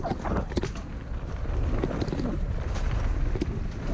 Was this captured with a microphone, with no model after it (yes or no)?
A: yes